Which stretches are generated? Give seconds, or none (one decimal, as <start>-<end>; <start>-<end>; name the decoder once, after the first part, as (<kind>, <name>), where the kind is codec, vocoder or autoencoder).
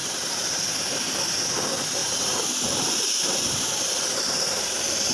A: 0.0-1.1 (vocoder, BigVGAN v2); 2.0-5.1